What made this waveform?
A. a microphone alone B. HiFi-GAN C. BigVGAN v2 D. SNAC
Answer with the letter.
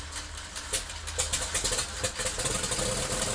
A